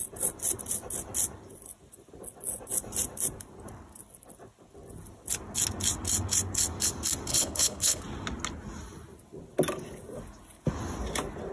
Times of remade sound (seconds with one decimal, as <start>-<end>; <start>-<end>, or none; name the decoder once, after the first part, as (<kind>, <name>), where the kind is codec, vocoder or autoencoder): 7.3-8.0 (codec, HILCodec)